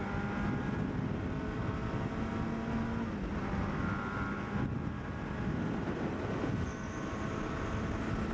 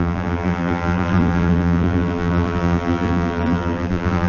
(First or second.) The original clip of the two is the first